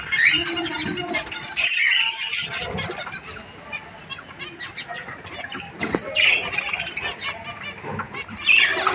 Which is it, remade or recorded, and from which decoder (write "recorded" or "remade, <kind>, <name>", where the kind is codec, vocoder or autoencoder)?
recorded